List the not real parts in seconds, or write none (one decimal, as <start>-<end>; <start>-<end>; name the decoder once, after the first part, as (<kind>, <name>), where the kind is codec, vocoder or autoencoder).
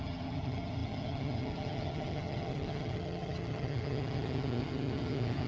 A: 0.0-5.5 (vocoder, HiFi-GAN)